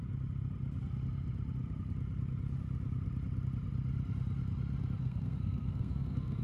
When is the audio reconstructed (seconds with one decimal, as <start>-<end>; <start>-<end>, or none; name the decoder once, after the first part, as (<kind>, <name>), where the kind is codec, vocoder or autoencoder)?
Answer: 5.0-6.4 (codec, SNAC)